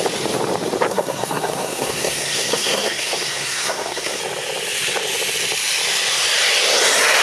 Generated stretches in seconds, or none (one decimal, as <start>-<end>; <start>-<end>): 0.9-4.2